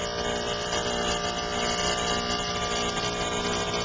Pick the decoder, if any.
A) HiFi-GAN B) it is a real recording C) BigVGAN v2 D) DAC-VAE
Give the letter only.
B